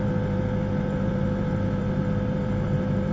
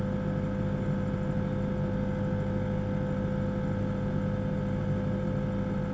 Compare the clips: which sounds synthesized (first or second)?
first